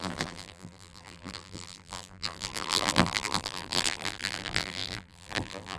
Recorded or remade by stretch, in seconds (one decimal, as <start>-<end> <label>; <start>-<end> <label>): 0.0-5.8 remade